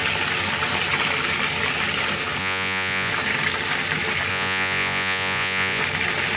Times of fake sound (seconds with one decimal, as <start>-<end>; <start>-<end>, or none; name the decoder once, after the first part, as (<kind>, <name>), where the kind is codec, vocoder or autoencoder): 2.4-3.1 (vocoder, Vocos); 4.3-5.8